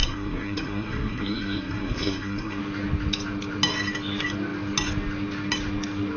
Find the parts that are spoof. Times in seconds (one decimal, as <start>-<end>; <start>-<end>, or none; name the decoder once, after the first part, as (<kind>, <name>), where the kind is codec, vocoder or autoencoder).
0.0-2.6 (codec, SNAC)